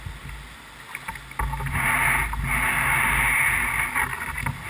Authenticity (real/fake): real